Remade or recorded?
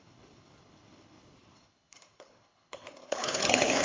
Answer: remade